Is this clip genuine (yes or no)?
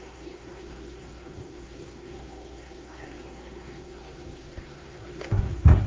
no